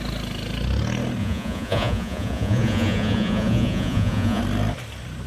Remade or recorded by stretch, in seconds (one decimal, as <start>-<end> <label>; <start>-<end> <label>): 0.0-1.2 recorded; 1.2-4.4 remade; 4.4-5.3 recorded